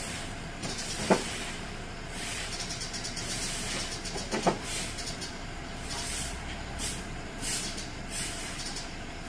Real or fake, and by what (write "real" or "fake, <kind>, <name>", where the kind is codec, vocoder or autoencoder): fake, vocoder, BigVGAN v2